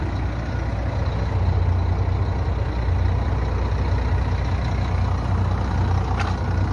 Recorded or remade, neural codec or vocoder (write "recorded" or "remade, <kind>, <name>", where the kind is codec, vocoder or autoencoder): recorded